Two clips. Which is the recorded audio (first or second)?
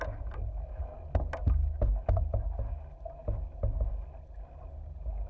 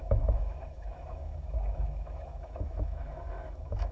first